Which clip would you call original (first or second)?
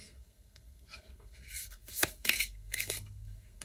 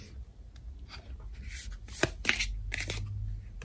second